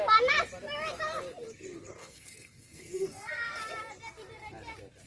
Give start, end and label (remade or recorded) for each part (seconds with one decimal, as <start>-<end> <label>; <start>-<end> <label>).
0.0-2.0 recorded; 2.0-3.7 remade; 3.7-5.1 recorded